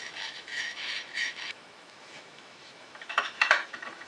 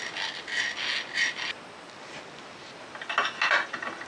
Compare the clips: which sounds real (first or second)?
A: second